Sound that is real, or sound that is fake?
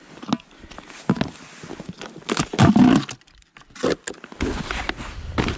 real